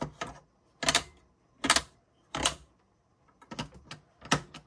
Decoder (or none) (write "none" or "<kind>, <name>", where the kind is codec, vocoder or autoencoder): none